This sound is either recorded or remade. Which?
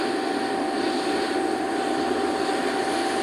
recorded